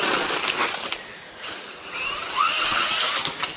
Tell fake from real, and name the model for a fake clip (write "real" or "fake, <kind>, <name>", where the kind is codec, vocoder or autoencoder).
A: real